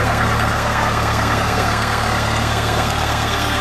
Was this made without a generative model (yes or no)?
no